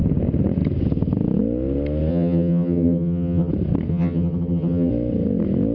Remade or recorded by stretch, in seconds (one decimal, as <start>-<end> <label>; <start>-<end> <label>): 0.0-2.1 recorded; 2.1-3.5 remade; 3.5-3.9 recorded; 3.9-4.9 remade; 4.9-5.7 recorded